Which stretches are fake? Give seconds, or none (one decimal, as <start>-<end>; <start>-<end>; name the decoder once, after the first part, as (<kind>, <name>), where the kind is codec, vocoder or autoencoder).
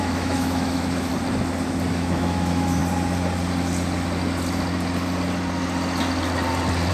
0.0-1.1 (autoencoder, DAC-VAE); 1.9-2.8